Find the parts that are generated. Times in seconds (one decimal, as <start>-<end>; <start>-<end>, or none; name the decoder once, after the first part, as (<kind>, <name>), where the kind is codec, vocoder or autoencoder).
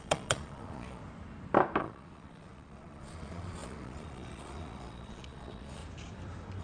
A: 0.0-1.0 (vocoder, Vocos); 1.8-5.8